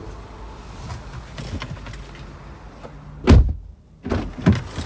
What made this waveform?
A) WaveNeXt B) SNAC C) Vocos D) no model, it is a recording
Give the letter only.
D